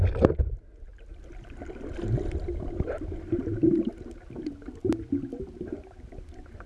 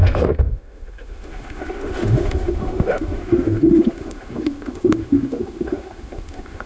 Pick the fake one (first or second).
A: second